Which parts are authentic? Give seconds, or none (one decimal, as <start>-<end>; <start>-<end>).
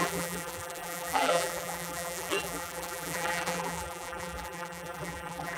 none